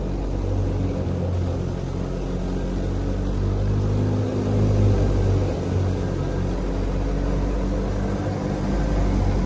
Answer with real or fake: real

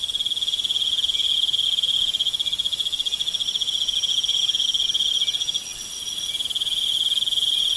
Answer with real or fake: real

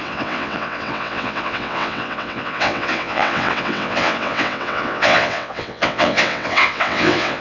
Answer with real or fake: fake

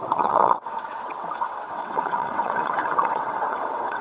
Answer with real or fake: fake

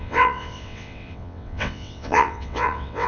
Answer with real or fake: fake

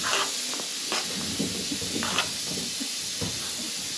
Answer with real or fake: real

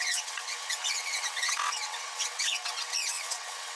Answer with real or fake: fake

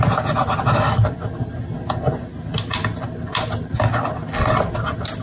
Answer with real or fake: real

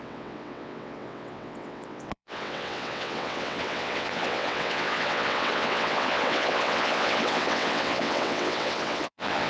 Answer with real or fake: fake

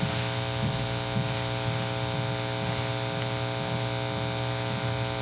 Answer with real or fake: real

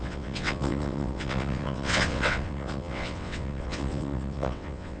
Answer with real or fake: fake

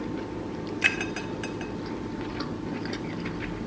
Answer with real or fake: real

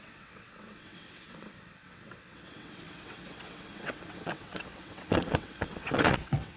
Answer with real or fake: fake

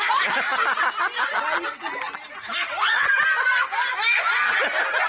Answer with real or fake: real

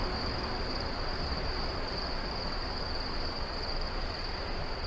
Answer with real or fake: real